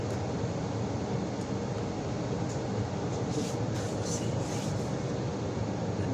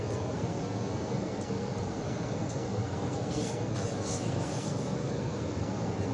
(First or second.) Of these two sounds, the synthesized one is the second